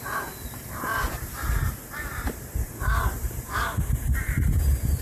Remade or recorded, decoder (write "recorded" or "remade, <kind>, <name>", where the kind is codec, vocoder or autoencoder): remade, vocoder, BigVGAN v2